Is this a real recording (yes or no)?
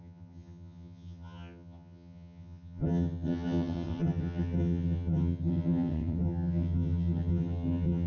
no